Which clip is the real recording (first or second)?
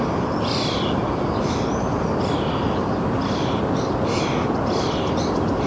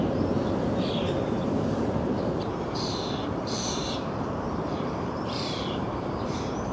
first